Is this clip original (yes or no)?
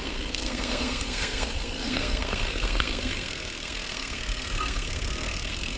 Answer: no